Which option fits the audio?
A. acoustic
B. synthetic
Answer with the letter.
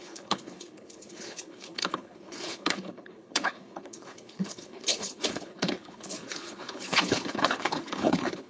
B